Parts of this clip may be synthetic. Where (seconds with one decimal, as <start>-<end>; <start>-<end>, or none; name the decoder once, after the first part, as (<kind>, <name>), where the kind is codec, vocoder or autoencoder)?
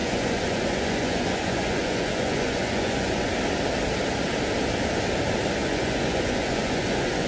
0.0-3.3 (vocoder, Vocos); 5.6-7.3